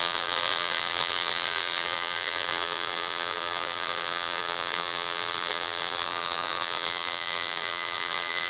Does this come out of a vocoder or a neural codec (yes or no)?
yes